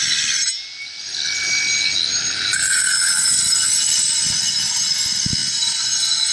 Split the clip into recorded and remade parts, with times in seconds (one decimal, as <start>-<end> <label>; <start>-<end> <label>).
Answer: 0.0-6.3 recorded